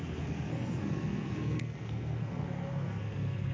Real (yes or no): no